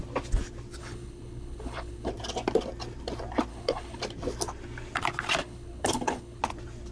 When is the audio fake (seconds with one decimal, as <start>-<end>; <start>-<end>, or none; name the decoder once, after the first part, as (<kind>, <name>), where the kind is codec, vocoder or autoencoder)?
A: 0.8-2.1 (codec, HILCodec); 3.5-4.0; 5.4-6.4